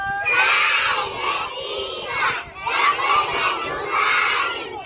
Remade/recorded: recorded